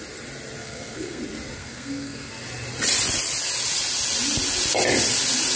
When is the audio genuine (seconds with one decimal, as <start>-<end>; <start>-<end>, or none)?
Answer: 0.0-0.6; 1.2-1.6; 2.3-5.6